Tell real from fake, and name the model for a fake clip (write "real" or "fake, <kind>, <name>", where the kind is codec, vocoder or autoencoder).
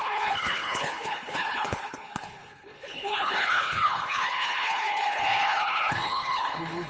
fake, codec, HILCodec